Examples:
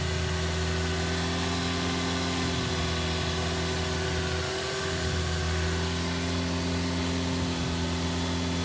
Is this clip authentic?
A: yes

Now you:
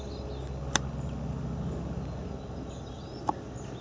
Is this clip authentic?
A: yes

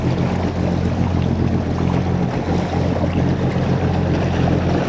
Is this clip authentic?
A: yes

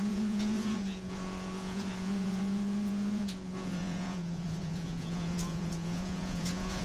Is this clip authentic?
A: no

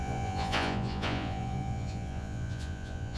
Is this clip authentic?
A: no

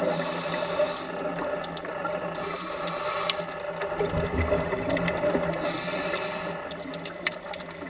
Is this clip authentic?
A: yes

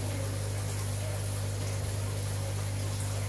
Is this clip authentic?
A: yes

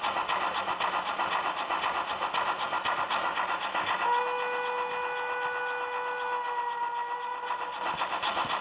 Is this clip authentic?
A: yes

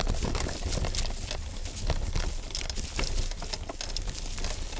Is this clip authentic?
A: yes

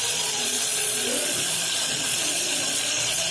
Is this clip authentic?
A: no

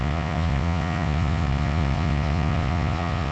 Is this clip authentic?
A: no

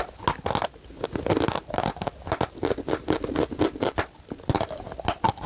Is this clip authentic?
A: yes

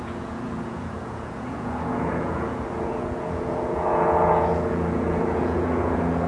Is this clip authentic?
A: no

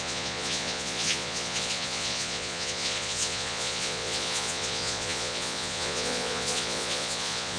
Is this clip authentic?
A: no